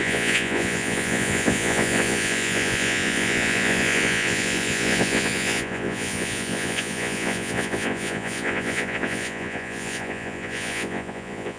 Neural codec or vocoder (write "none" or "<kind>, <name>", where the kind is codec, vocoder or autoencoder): vocoder, Vocos